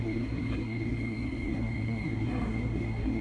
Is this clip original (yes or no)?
no